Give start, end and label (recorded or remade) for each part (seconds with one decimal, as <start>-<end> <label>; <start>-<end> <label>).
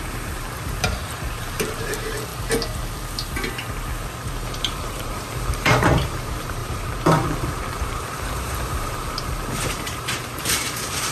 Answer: 0.0-2.3 remade; 2.3-4.5 recorded; 4.5-11.1 remade